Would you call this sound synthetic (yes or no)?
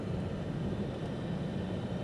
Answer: yes